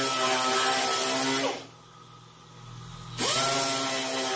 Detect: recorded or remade recorded